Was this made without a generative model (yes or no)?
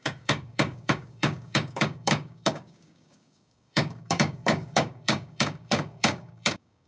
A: no